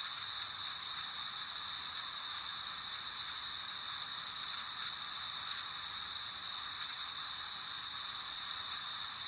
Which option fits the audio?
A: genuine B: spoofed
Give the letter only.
A